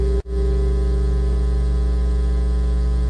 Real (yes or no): yes